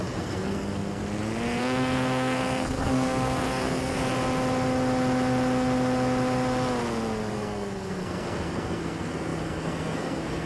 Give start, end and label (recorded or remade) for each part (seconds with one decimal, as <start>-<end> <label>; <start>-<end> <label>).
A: 0.0-1.0 remade; 1.0-1.6 recorded; 1.6-3.9 remade; 3.9-7.3 recorded; 7.3-10.5 remade